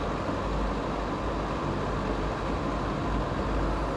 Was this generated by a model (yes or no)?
no